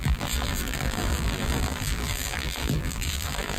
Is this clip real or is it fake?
fake